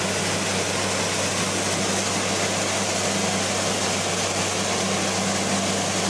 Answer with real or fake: real